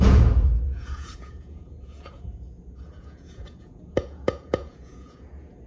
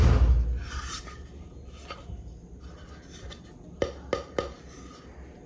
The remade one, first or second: first